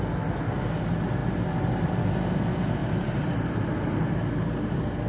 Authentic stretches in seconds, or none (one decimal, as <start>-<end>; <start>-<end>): 0.0-2.8; 3.9-5.1